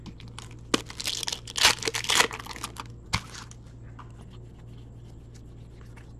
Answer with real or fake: real